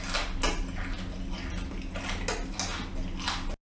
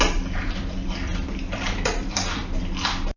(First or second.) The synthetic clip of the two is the second